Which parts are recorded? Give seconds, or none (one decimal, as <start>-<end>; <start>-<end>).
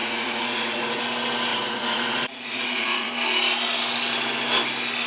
1.0-1.5; 3.1-5.1